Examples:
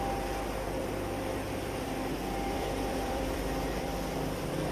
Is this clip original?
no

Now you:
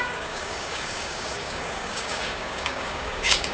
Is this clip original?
no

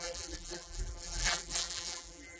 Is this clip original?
no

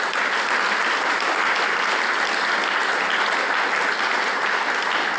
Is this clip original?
yes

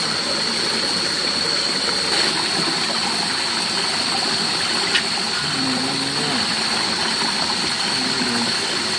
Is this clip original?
yes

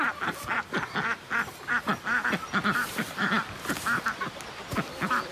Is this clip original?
yes